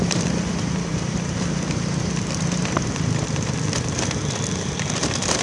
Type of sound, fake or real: fake